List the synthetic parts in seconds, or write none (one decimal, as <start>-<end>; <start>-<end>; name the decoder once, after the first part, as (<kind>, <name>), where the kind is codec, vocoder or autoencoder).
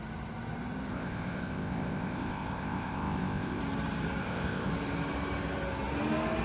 0.9-3.6 (codec, ZipCodec); 4.2-4.7